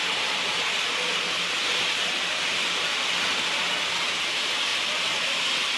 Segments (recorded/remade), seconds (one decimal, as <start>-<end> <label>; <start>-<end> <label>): 0.0-5.8 recorded